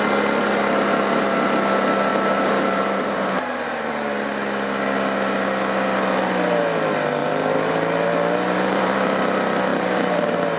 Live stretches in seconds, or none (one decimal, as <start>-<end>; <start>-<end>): 0.0-2.1; 4.2-7.2; 9.2-9.7